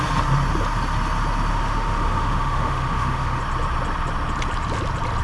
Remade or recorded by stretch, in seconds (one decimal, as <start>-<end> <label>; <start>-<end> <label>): 0.0-1.5 recorded; 1.5-3.4 remade; 3.4-5.2 recorded